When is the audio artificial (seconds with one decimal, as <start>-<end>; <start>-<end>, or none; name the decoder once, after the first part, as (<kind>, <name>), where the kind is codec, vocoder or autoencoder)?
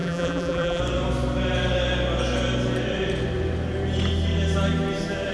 0.0-0.8 (vocoder, BigVGAN v2)